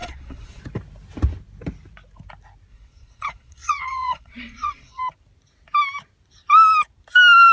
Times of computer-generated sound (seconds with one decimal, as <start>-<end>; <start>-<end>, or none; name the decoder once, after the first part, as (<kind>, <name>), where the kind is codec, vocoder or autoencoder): 0.0-0.6 (vocoder, Vocos); 2.7-5.0